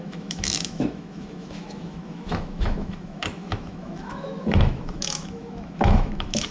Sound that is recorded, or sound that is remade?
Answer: remade